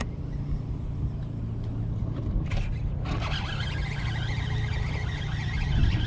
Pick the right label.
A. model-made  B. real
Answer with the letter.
B